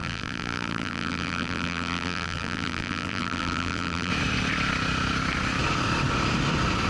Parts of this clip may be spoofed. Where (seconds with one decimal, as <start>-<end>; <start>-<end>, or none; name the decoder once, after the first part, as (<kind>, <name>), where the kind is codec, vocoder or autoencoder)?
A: 0.0-4.1 (vocoder, BigVGAN v2)